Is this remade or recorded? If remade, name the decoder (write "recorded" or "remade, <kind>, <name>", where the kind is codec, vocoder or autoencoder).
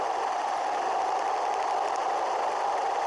recorded